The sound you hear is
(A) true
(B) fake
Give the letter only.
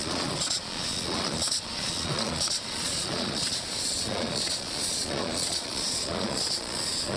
B